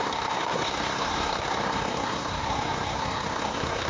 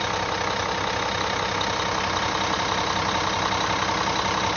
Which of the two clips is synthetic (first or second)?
first